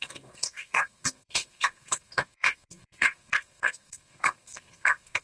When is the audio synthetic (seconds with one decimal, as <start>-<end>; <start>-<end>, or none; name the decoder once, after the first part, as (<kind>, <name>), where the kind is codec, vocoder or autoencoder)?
0.0-5.2 (codec, SNAC)